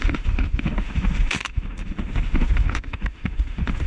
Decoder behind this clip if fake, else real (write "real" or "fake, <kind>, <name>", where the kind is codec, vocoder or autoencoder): fake, autoencoder, DAC-VAE